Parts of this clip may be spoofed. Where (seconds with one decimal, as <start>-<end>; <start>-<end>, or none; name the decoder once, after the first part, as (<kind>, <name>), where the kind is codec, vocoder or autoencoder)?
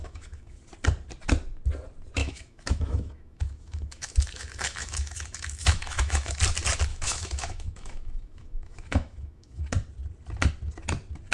0.0-0.6 (autoencoder, DAC-VAE); 2.2-6.4; 6.9-9.6